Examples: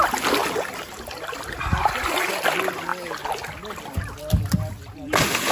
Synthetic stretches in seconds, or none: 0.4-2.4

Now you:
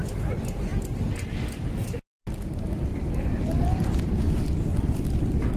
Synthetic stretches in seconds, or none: 2.9-4.2

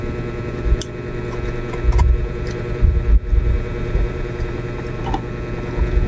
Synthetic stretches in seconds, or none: 2.2-5.0

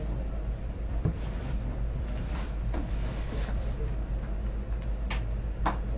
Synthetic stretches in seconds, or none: 0.6-4.1